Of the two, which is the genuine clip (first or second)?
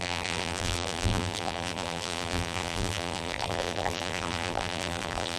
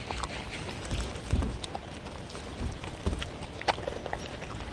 second